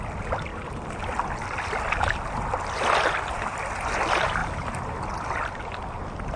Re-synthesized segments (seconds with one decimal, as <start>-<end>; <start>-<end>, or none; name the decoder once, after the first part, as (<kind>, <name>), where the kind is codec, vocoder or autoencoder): none